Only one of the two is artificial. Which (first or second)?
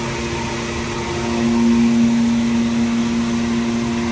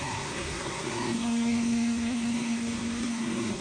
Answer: second